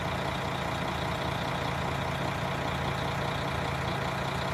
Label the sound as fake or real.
real